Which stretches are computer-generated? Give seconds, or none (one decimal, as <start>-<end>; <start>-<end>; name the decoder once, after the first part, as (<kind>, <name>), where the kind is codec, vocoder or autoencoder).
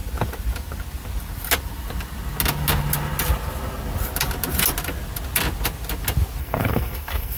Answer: 6.4-7.4 (codec, SNAC)